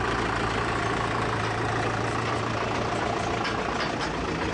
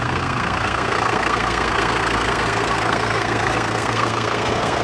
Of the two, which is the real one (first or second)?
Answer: first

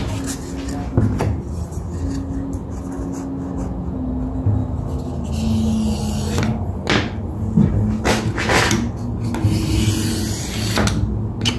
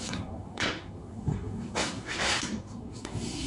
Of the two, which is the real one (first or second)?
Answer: first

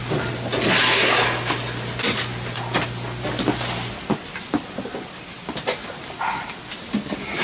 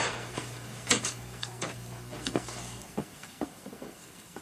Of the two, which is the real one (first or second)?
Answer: first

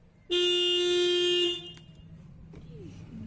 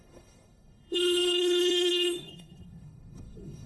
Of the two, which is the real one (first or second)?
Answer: first